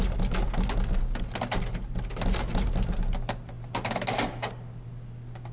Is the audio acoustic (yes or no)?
yes